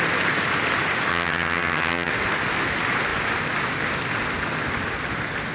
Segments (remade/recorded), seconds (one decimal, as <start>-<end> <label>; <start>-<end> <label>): 0.0-1.1 recorded; 1.1-2.1 remade; 2.1-5.5 recorded